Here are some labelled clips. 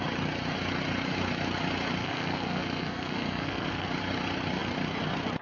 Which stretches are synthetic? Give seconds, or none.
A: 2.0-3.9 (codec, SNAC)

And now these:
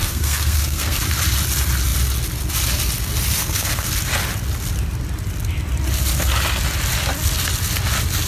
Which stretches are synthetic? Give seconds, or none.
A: 0.0-1.0 (codec, SNAC); 3.4-3.9

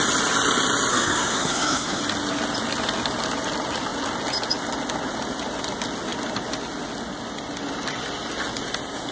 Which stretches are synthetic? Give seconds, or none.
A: 0.9-2.0 (codec, SNAC)

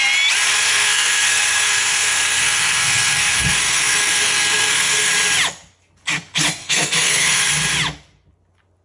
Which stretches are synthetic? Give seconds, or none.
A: 0.5-5.1 (codec, SNAC); 6.6-7.5

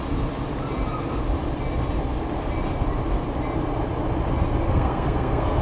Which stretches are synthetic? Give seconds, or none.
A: 4.7-5.6 (codec, SNAC)